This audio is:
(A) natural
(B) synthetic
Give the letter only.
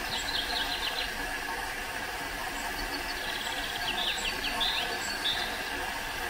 A